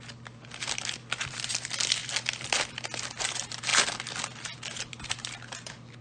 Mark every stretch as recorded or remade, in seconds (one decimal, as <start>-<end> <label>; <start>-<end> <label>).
0.0-6.0 recorded